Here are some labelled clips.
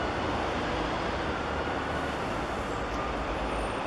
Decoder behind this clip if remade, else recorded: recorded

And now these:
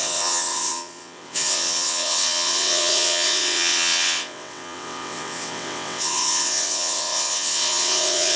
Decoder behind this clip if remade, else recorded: remade, vocoder, WaveNeXt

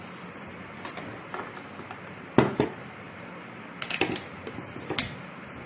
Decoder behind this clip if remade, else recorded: recorded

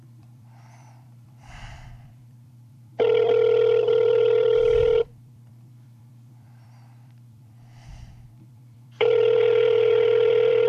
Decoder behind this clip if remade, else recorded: remade, vocoder, BigVGAN v2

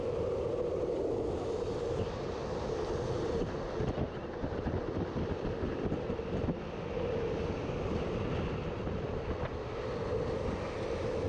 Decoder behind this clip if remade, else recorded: recorded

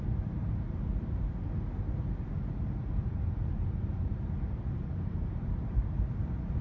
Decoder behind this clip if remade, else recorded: remade, vocoder, BigVGAN v2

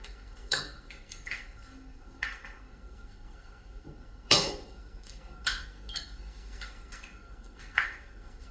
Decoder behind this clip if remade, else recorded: remade, codec, SNAC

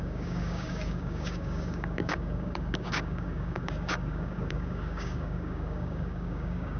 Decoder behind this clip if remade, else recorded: remade, codec, DAC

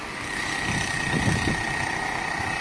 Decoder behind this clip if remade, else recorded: recorded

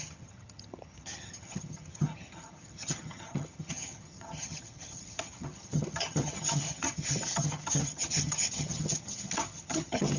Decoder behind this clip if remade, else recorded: remade, vocoder, HiFi-GAN